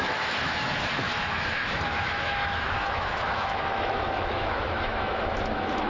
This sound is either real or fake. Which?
fake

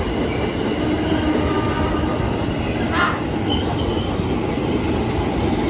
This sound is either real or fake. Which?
real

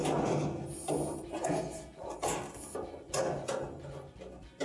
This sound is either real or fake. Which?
real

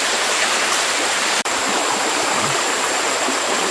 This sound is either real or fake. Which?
fake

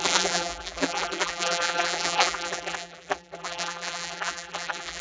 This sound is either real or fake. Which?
fake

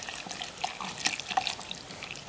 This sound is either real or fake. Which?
real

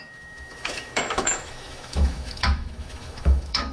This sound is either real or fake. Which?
fake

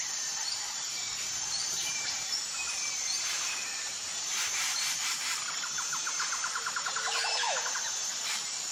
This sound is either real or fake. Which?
fake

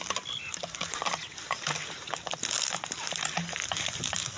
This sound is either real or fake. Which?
real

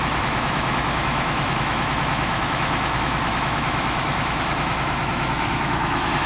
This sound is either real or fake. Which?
fake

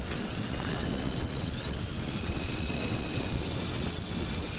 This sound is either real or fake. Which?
fake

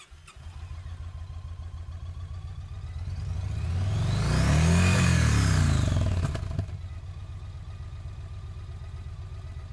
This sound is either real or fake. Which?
real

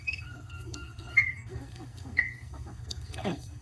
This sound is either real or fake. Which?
fake